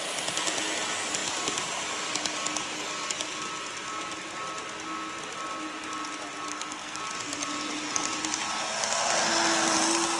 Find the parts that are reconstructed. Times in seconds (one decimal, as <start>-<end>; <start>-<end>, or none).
6.5-7.0